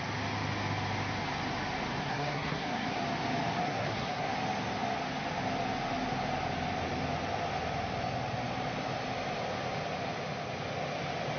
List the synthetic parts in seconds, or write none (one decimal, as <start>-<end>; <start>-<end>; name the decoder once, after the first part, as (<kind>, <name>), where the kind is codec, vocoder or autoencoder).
2.0-3.0 (codec, SNAC); 3.6-4.3